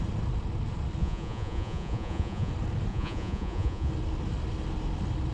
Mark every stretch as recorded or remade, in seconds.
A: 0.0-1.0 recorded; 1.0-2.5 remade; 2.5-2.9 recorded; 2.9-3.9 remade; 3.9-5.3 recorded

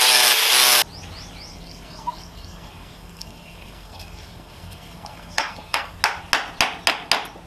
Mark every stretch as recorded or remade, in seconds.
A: 0.0-1.5 recorded; 1.5-6.0 remade; 6.0-7.5 recorded

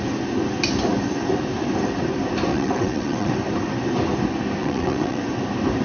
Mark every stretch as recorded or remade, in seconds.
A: 0.0-2.5 recorded; 2.5-3.3 remade; 3.3-4.6 recorded; 4.6-5.2 remade; 5.2-5.8 recorded

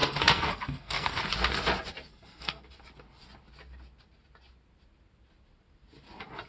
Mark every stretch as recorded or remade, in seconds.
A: 0.0-1.2 remade; 1.2-2.1 recorded; 2.1-2.7 remade; 2.7-6.5 recorded

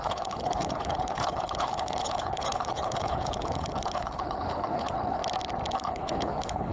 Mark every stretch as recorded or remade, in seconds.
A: 0.0-5.2 remade; 5.2-5.7 recorded; 5.7-6.7 remade

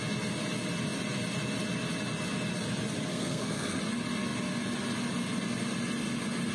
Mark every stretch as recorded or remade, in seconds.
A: 0.0-3.1 recorded; 3.1-3.8 remade; 3.8-6.5 recorded

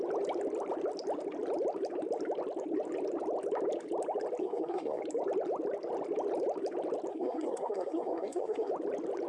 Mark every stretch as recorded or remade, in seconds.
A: 0.0-4.4 recorded; 4.4-5.0 remade; 5.0-7.1 recorded; 7.1-8.7 remade; 8.7-9.3 recorded

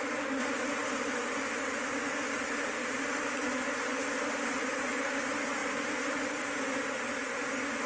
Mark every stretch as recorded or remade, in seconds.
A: 0.0-4.5 recorded; 4.5-5.1 remade; 5.1-5.6 recorded; 5.6-6.4 remade; 6.4-7.9 recorded